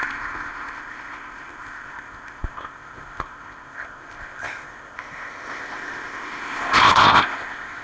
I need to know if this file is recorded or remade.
remade